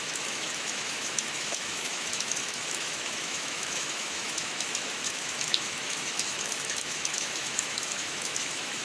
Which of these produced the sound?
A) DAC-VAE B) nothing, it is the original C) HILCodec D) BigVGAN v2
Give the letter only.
A